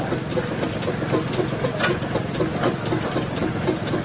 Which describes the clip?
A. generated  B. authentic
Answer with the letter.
B